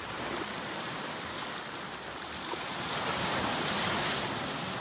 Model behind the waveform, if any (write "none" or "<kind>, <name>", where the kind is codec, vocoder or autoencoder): none